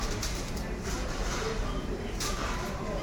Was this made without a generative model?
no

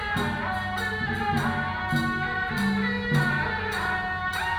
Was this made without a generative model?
yes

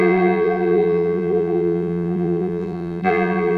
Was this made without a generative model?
no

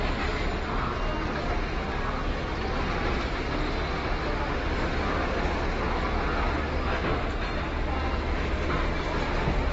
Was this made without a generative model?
yes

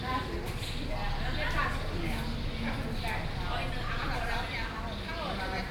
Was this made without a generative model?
yes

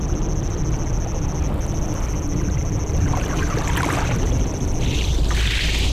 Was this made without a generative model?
yes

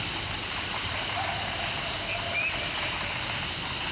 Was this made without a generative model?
yes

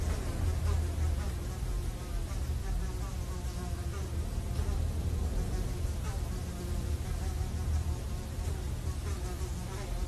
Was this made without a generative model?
yes